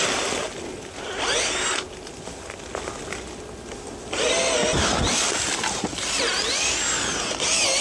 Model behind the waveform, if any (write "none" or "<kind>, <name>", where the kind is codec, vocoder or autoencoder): none